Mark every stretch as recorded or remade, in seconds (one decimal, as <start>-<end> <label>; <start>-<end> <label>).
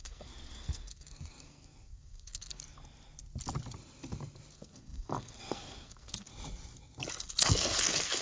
0.0-2.6 remade; 2.6-4.5 recorded; 4.5-6.3 remade; 6.3-7.1 recorded; 7.1-8.2 remade